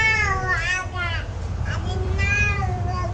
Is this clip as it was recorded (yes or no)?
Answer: no